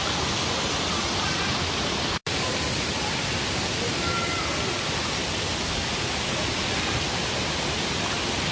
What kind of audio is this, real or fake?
real